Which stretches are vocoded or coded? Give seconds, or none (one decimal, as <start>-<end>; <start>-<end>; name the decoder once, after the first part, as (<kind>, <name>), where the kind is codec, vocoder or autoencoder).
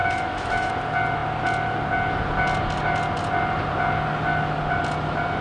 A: 0.0-0.7 (autoencoder, DAC-VAE)